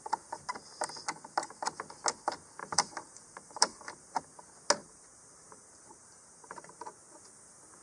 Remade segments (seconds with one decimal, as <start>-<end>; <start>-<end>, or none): 2.6-4.2; 4.8-6.9